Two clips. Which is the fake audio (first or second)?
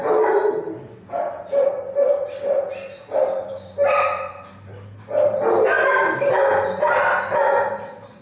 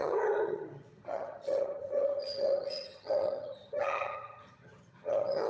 second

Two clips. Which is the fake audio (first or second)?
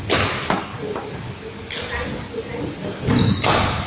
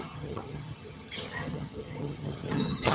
second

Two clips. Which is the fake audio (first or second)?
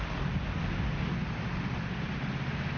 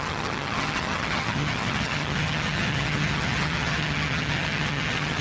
second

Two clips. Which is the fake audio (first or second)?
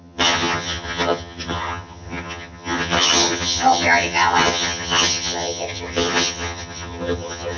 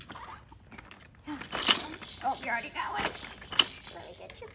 first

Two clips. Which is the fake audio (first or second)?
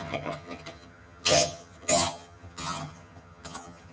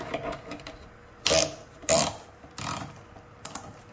first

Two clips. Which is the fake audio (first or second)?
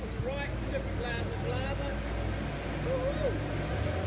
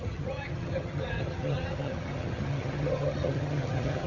second